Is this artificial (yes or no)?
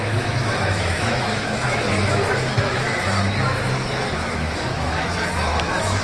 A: yes